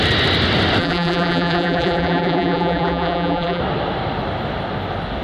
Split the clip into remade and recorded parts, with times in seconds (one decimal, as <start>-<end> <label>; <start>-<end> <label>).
0.0-0.8 recorded; 0.8-3.6 remade; 3.6-5.2 recorded